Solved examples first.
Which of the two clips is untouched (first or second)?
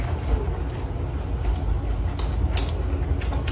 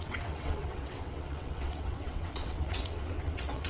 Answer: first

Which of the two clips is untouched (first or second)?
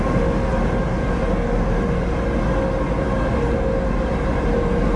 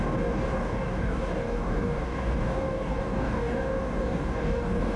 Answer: first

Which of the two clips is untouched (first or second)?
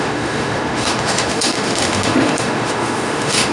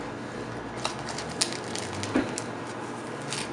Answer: second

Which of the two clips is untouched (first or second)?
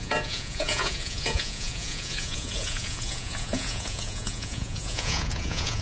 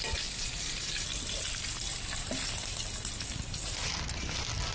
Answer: second